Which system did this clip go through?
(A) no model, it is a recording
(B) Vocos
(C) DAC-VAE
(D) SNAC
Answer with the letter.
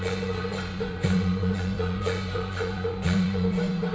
B